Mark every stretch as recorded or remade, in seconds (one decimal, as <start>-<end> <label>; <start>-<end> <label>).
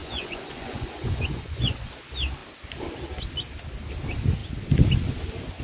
0.0-1.9 remade; 1.9-5.6 recorded